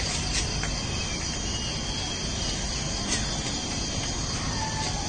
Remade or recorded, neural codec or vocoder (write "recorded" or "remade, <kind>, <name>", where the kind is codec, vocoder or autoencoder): recorded